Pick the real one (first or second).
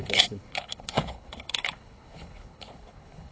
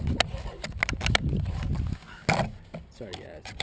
second